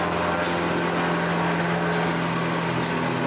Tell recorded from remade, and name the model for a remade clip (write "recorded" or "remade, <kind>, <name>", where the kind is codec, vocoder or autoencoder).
recorded